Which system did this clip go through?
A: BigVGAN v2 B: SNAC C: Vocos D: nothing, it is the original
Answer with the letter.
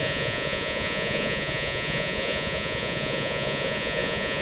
C